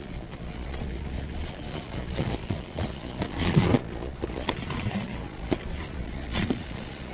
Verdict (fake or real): fake